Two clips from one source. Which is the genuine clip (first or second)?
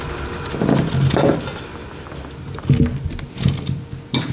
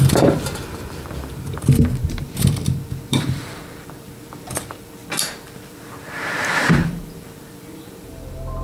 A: first